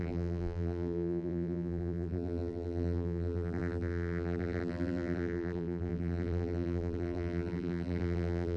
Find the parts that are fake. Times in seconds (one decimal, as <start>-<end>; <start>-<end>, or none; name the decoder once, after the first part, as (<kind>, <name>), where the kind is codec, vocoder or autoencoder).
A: 0.0-8.6 (vocoder, BigVGAN v2)